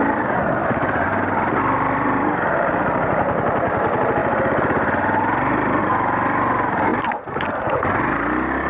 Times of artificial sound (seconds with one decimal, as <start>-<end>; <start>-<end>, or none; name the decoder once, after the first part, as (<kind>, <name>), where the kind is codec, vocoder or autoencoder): none